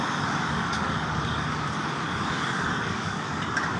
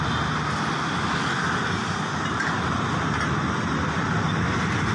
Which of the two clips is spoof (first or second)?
first